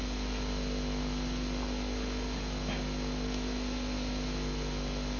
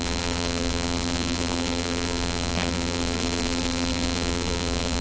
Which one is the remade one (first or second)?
second